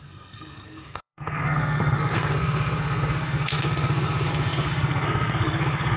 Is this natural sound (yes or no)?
no